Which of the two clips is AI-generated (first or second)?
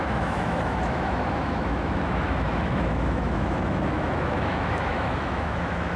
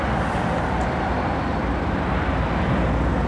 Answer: first